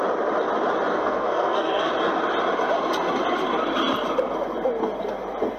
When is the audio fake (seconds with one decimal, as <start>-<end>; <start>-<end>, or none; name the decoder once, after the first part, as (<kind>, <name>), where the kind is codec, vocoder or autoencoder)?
0.9-1.9 (codec, SNAC)